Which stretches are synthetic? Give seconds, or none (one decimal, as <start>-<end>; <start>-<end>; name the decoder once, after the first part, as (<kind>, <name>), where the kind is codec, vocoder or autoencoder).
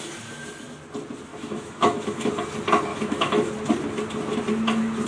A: 1.3-2.3 (autoencoder, DAC-VAE); 2.9-3.5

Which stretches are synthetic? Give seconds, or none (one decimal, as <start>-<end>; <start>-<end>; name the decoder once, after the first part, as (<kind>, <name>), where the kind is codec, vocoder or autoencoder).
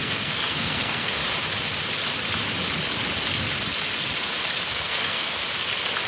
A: 0.0-1.2 (codec, SNAC); 4.7-5.4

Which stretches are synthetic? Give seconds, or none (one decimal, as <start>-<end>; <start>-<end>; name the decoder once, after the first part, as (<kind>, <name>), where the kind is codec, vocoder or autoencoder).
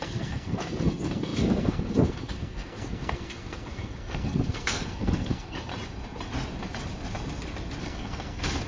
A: 0.0-5.7 (codec, SNAC); 7.8-8.7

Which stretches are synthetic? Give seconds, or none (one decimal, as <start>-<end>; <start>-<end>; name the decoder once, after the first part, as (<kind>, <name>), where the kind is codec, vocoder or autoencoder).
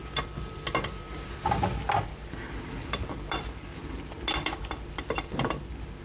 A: none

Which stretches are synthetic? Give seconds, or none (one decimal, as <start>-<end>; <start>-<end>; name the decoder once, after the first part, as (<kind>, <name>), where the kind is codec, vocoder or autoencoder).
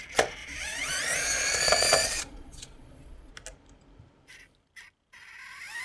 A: 0.4-3.3 (vocoder, Vocos)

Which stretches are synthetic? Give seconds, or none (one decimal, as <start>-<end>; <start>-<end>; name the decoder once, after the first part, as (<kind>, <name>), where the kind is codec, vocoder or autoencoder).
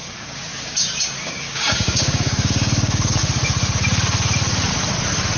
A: 0.0-3.2 (codec, DAC)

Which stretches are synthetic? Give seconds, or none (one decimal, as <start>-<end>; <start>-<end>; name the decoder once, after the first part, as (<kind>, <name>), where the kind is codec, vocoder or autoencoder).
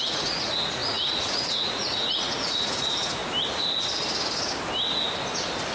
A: 0.0-3.2 (vocoder, Vocos)